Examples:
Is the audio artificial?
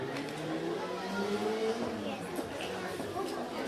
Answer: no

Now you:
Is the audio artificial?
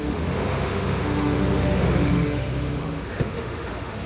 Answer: yes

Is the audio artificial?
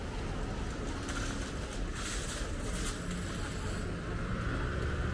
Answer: no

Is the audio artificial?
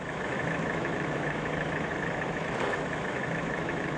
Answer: yes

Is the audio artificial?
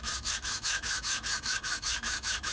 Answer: yes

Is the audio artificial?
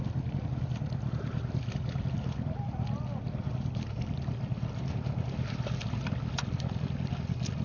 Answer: no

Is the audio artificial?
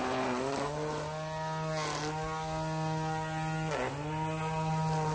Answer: no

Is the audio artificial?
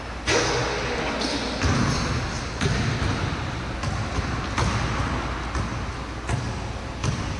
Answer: no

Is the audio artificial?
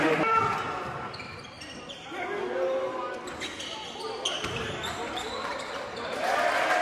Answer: no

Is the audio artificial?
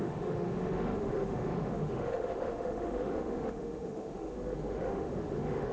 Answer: yes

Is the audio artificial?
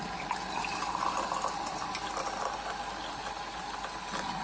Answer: no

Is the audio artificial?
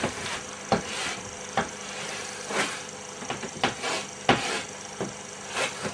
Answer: no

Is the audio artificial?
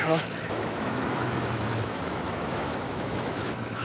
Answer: yes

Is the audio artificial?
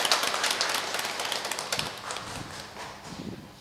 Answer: no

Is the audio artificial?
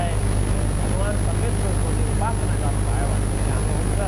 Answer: no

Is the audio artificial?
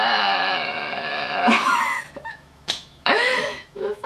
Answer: yes